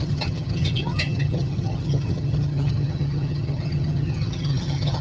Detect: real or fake fake